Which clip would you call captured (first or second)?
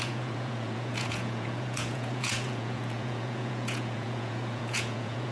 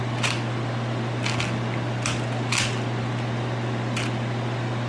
second